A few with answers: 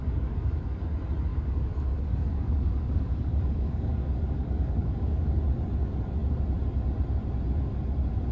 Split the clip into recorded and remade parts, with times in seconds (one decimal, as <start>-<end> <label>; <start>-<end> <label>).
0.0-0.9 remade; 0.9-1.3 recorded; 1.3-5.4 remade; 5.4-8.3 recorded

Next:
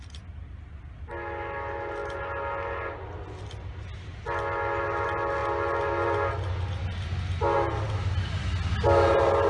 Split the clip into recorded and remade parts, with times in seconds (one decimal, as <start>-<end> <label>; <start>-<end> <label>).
0.0-9.5 recorded

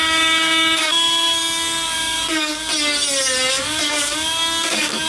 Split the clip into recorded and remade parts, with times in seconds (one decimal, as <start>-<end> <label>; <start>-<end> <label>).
0.0-2.7 remade; 2.7-3.5 recorded; 3.5-5.1 remade

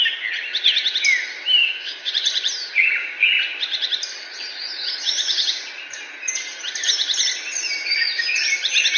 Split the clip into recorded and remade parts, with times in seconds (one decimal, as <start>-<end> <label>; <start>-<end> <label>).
0.0-1.6 recorded; 1.6-2.1 remade; 2.1-9.0 recorded